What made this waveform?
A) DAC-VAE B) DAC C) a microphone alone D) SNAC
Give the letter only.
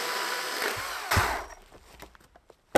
C